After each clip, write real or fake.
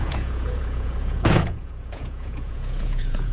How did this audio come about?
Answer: fake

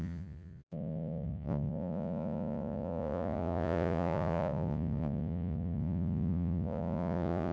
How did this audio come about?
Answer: fake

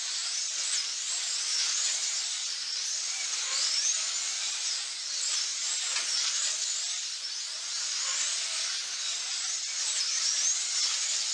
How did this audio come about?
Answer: real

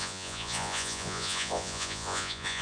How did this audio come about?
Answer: fake